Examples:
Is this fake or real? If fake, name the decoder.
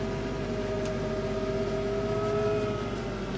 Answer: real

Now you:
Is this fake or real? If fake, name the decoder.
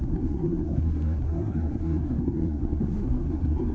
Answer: fake, codec, SNAC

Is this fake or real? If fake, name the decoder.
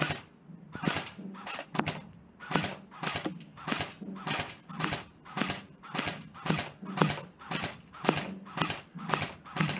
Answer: real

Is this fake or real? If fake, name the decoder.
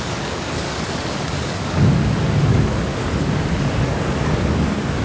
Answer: fake, codec, DAC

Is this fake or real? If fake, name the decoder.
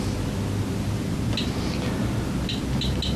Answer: real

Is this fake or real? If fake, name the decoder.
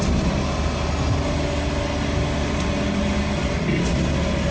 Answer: real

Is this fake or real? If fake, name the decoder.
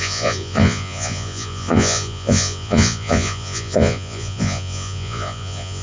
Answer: fake, vocoder, Vocos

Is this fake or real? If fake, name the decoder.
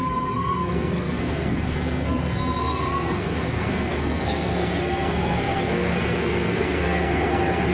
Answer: fake, codec, SNAC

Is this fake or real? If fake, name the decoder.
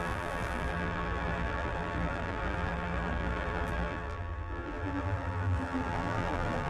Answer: fake, vocoder, BigVGAN v2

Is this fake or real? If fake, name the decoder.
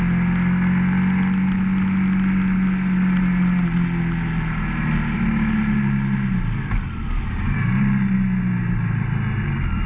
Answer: real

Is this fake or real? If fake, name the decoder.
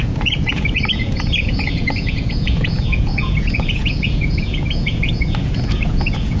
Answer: fake, vocoder, Vocos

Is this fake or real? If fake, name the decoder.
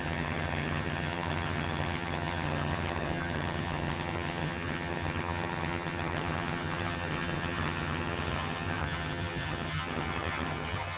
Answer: fake, vocoder, HiFi-GAN